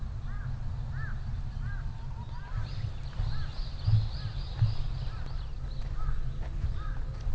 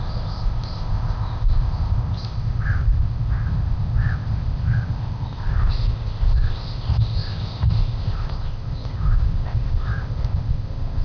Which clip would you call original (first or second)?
first